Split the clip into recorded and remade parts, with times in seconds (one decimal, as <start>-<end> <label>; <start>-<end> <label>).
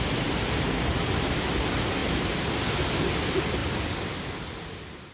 0.0-5.1 recorded